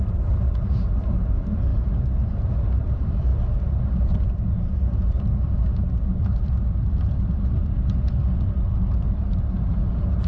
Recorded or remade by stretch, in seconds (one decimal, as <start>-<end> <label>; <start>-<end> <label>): 0.0-3.3 remade; 3.3-4.6 recorded; 4.6-8.2 remade; 8.2-8.9 recorded; 8.9-10.3 remade